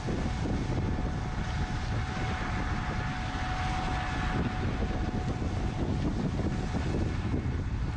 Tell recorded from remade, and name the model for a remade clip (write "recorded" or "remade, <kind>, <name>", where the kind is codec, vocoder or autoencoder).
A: recorded